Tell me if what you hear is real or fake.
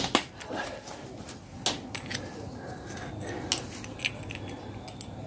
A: real